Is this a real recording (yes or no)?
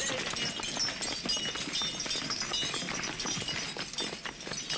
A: yes